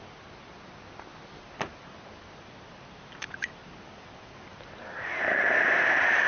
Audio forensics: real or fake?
real